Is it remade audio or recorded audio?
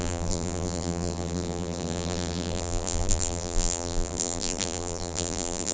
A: remade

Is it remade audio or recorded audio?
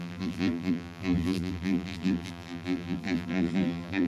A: remade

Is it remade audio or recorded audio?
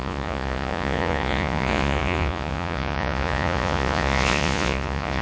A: remade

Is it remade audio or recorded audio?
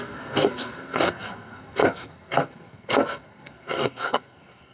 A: remade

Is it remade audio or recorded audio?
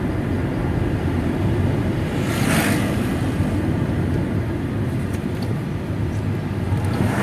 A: recorded